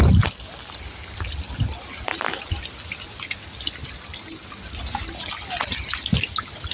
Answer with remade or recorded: recorded